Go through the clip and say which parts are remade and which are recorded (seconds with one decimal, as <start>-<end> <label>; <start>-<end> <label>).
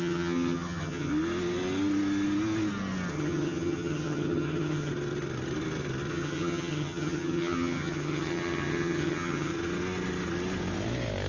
0.0-1.1 remade; 1.1-3.1 recorded; 3.1-4.9 remade; 4.9-6.1 recorded; 6.1-9.5 remade; 9.5-11.3 recorded